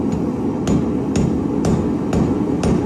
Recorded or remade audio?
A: recorded